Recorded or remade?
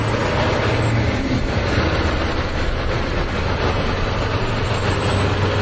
recorded